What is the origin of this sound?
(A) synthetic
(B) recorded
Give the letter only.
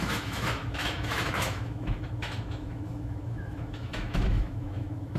A